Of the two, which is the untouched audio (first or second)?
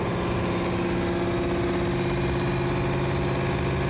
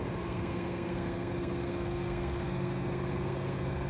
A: first